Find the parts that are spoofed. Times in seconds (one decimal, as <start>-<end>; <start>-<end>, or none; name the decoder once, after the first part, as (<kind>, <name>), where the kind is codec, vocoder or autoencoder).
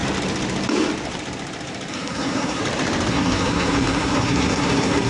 1.9-2.6 (codec, SNAC); 3.1-5.1